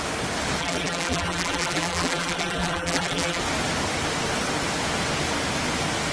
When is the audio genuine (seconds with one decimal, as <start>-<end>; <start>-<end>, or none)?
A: 0.0-0.6; 3.4-6.1